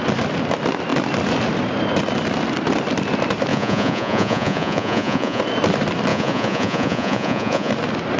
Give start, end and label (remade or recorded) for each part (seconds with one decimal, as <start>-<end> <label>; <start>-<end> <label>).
0.0-3.5 recorded; 3.5-5.4 remade; 5.4-6.1 recorded; 6.1-7.7 remade; 7.7-8.2 recorded